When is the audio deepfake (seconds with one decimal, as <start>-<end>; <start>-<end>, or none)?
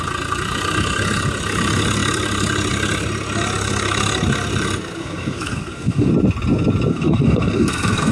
5.0-6.1; 6.9-8.1